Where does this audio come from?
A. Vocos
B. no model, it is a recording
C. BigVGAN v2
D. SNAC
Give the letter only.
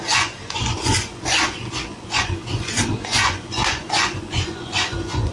A